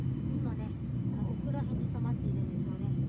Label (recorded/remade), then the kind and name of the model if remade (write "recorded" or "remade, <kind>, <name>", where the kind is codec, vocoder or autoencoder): remade, vocoder, BigVGAN v2